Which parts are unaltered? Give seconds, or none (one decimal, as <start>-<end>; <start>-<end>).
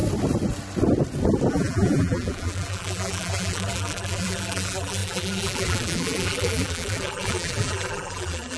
0.0-1.5